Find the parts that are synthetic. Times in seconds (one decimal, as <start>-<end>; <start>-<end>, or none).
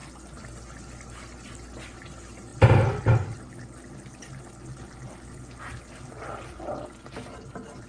none